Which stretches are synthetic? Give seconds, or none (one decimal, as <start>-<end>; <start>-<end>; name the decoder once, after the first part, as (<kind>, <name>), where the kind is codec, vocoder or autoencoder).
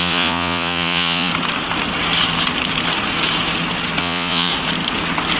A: 0.0-1.3 (vocoder, Vocos); 4.0-4.5